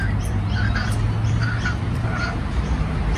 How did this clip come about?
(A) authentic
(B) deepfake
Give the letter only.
A